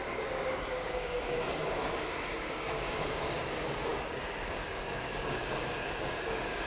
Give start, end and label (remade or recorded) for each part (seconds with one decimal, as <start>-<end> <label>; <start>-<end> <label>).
0.0-6.7 remade